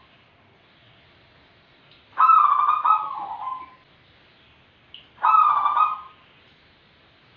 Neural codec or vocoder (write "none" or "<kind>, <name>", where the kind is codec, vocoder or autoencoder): none